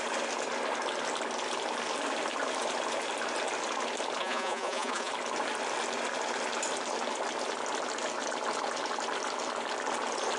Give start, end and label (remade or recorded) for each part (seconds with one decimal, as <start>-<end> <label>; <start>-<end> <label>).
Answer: 0.0-4.2 recorded; 4.2-5.1 remade; 5.1-10.4 recorded